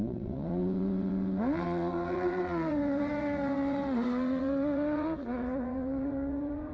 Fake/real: fake